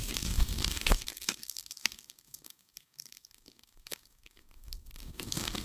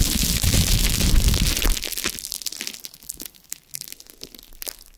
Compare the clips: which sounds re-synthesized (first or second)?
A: first